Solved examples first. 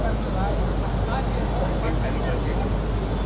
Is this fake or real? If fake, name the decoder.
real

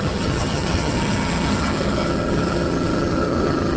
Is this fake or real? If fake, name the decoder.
fake, vocoder, HiFi-GAN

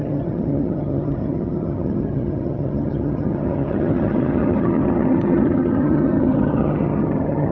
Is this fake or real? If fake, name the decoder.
fake, vocoder, HiFi-GAN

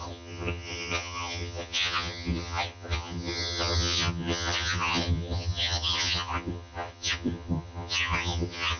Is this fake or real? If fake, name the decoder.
fake, vocoder, HiFi-GAN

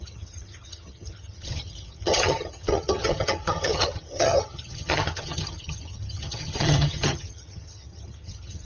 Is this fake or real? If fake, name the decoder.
fake, vocoder, HiFi-GAN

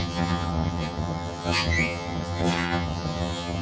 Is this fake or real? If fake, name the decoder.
fake, vocoder, HiFi-GAN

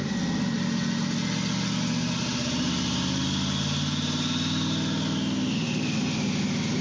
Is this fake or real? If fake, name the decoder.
real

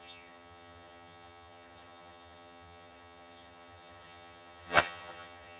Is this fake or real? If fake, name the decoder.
fake, vocoder, HiFi-GAN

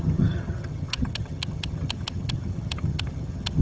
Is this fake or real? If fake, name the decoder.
fake, vocoder, HiFi-GAN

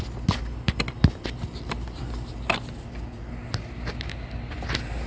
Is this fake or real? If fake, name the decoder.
real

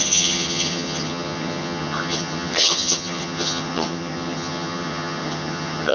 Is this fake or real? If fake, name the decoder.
fake, vocoder, HiFi-GAN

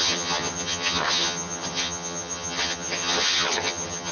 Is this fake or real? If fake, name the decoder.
fake, vocoder, HiFi-GAN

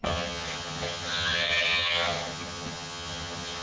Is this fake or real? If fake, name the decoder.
fake, vocoder, HiFi-GAN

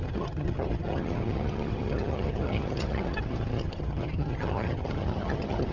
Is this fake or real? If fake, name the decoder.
fake, vocoder, HiFi-GAN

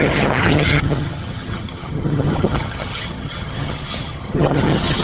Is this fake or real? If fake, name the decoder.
fake, vocoder, HiFi-GAN